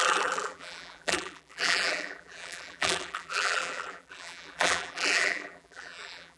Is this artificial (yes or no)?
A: yes